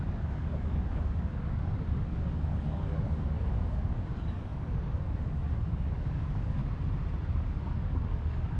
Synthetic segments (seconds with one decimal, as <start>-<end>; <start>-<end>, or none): 0.0-6.6; 7.3-8.6